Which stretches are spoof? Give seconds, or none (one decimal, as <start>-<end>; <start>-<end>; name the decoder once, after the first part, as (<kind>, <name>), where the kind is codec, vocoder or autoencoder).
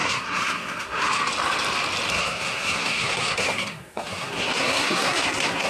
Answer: 0.0-1.2 (codec, SNAC); 2.1-5.7